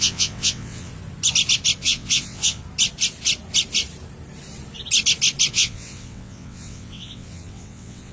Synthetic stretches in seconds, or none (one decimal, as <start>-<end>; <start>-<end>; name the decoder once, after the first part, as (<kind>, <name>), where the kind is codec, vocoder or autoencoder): 0.0-0.9 (vocoder, WaveNeXt); 1.8-2.6; 5.5-8.1

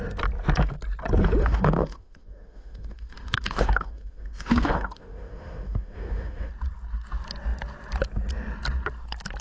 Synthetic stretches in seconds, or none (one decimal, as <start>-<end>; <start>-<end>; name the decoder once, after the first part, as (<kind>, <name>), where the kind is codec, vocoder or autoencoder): 1.4-6.5 (autoencoder, DAC-VAE)